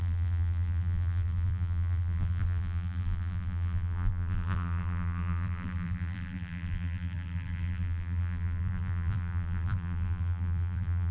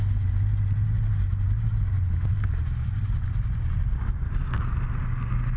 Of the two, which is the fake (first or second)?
first